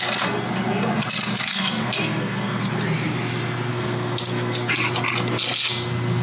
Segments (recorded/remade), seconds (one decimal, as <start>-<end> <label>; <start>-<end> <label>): 0.0-1.4 recorded; 1.4-2.6 remade; 2.6-3.7 recorded; 3.7-4.7 remade; 4.7-6.2 recorded